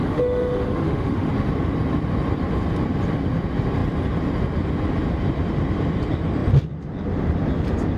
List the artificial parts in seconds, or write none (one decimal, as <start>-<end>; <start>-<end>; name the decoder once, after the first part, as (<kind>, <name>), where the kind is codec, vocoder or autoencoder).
0.0-1.3 (autoencoder, DAC-VAE)

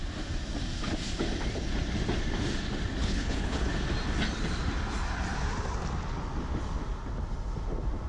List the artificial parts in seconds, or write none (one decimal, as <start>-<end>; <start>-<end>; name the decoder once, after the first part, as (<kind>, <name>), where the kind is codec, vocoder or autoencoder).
3.0-3.7 (codec, HILCodec)

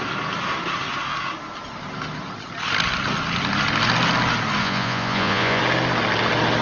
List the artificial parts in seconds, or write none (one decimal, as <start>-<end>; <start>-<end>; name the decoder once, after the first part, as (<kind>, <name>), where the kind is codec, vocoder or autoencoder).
4.6-5.6 (vocoder, Vocos)

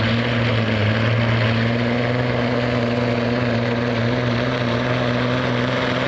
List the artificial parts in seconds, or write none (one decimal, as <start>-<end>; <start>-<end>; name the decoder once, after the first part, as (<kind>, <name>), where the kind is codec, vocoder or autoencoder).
none

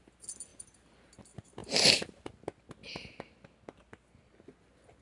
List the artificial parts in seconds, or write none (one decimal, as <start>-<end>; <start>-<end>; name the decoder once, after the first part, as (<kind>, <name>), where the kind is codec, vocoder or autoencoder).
1.6-2.3 (vocoder, BigVGAN v2)

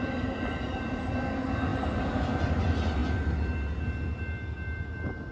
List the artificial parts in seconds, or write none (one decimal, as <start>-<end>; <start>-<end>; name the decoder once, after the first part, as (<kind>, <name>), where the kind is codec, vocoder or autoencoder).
none

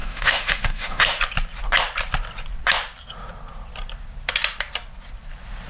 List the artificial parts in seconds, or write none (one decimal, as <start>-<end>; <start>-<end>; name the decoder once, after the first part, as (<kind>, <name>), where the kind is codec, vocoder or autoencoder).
0.0-1.2 (autoencoder, DAC-VAE)

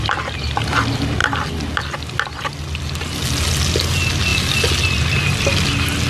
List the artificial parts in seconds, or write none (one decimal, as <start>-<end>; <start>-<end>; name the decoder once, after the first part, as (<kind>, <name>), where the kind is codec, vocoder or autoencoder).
none